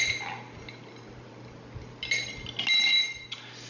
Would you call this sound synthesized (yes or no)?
no